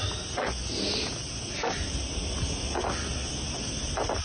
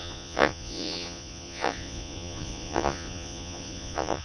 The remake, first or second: second